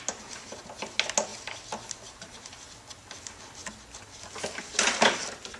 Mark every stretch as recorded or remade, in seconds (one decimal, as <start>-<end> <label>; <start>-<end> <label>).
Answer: 0.0-5.6 recorded